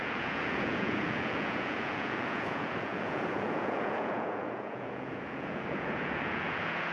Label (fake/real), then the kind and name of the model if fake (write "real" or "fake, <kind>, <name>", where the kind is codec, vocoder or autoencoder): fake, vocoder, Vocos